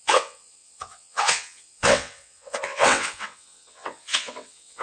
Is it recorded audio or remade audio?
remade